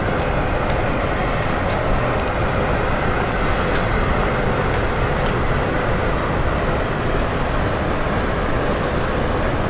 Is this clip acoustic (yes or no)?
yes